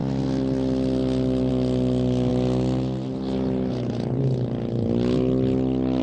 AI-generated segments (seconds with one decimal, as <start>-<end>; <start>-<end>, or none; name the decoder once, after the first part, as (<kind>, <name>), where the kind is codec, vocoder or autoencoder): none